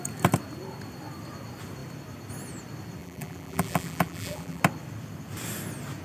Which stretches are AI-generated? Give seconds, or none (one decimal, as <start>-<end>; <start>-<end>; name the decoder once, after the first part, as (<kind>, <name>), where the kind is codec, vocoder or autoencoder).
3.0-4.6 (vocoder, BigVGAN v2)